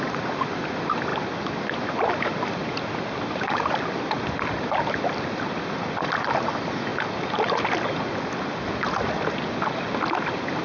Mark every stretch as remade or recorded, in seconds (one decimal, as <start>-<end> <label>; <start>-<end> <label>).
0.0-10.6 recorded